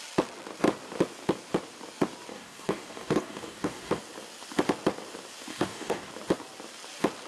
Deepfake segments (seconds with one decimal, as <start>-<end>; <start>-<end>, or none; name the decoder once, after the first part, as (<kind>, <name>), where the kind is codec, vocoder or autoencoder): 2.3-4.0 (codec, DAC); 5.5-6.1